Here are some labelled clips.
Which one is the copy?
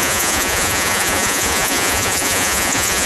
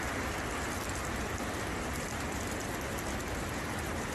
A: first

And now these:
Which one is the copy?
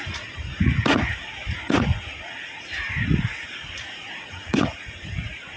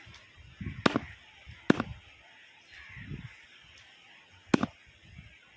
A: first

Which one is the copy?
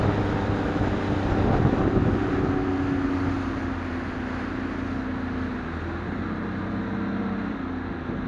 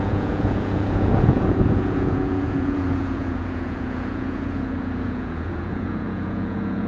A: second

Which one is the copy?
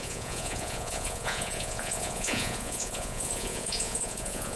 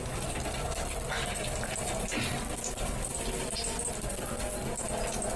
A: first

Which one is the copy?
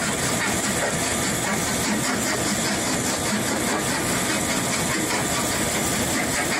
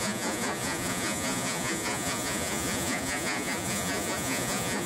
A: second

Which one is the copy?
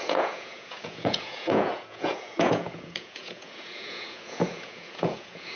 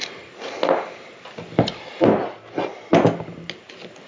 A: first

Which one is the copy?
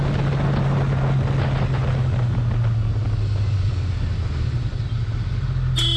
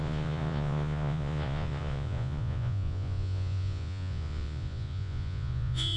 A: second